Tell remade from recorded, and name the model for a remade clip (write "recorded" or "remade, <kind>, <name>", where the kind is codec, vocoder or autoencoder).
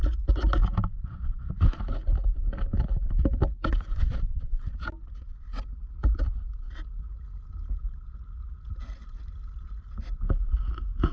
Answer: recorded